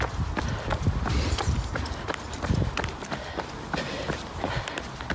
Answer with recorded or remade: recorded